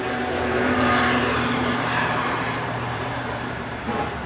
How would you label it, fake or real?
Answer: fake